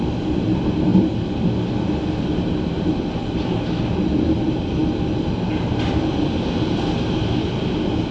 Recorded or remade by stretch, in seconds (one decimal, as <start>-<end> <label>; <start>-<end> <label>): 0.0-8.1 recorded